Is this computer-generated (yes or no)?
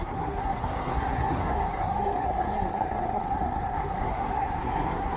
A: yes